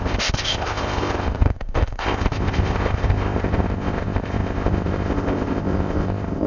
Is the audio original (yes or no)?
no